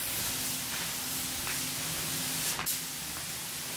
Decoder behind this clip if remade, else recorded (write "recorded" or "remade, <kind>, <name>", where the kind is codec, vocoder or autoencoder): recorded